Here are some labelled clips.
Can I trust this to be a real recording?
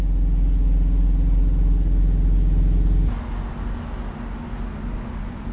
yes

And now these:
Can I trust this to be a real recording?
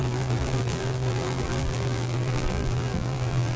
no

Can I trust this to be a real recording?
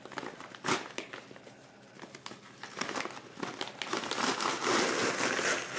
yes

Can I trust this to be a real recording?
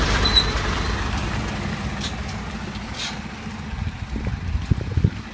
yes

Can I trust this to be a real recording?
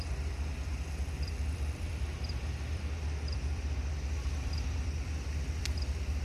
no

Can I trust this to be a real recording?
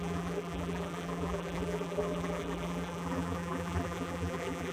no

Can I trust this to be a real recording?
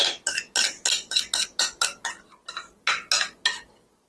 yes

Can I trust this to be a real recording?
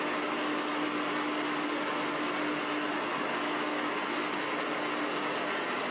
yes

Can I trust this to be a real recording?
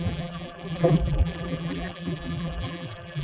no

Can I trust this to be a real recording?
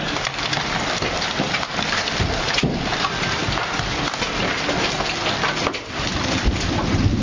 no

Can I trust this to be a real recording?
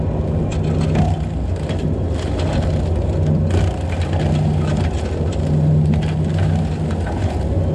yes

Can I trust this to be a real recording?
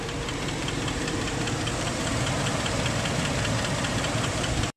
no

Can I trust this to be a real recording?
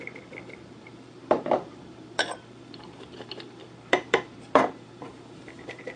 no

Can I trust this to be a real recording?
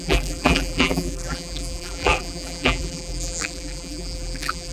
no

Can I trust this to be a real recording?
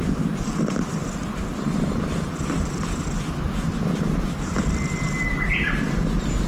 yes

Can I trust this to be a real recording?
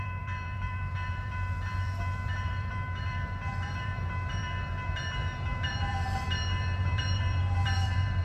no